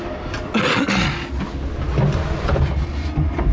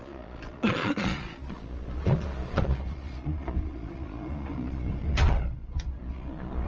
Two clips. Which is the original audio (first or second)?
first